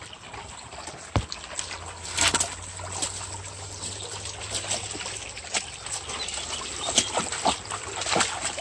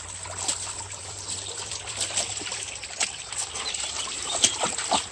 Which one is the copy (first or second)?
second